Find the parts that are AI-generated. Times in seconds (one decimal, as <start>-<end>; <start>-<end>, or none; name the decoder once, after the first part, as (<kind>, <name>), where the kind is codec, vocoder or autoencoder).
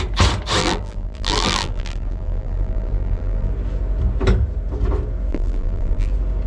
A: 0.6-3.5 (vocoder, BigVGAN v2); 5.3-6.1